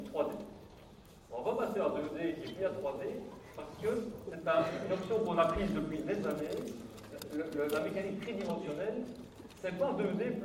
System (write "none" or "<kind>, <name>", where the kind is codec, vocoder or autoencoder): none